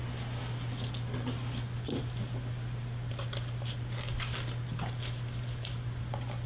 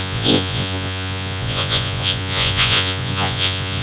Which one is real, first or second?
first